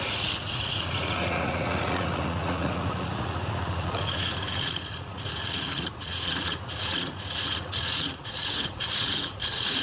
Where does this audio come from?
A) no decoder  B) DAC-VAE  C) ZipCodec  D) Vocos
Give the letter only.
D